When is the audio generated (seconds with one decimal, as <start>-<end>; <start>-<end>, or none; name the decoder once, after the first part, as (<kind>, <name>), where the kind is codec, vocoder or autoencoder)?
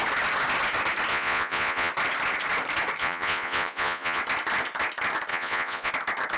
1.1-1.9 (vocoder, Vocos); 3.0-4.2; 5.3-5.9